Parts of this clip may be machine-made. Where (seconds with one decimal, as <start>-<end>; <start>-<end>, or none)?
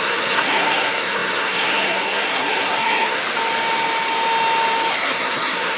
0.0-3.2; 4.9-5.8